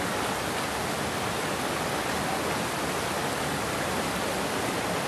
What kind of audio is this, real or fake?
real